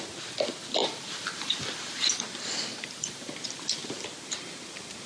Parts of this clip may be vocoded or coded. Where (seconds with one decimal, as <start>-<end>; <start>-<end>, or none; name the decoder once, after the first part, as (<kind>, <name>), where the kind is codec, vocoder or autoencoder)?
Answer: 0.8-2.2 (vocoder, BigVGAN v2); 2.7-3.3